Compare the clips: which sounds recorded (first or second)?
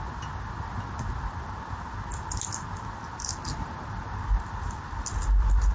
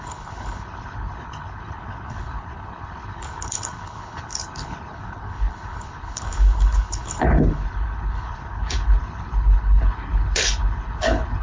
first